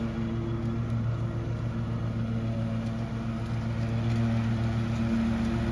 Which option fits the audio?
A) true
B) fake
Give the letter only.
A